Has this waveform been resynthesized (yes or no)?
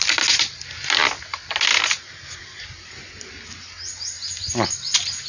no